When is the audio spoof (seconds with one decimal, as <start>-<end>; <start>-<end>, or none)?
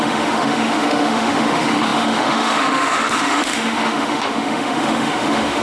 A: 0.0-5.6